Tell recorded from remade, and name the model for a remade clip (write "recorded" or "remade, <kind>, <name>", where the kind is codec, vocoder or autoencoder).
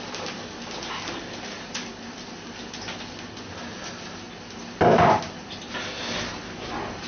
recorded